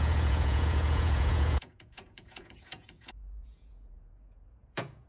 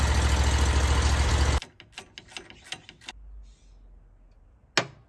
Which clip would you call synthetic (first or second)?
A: first